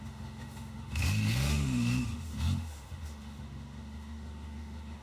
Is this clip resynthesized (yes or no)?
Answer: yes